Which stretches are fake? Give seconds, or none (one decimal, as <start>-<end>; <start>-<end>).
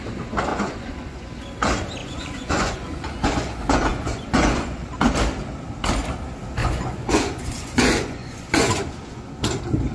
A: 0.5-1.3; 2.0-5.0; 6.6-9.3